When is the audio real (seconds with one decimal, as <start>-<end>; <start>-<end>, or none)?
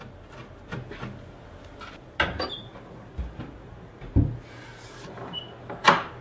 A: 0.0-6.2